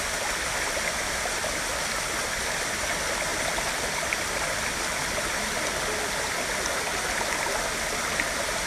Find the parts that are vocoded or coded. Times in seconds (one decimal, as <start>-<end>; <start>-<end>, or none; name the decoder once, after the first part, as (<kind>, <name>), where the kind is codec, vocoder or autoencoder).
none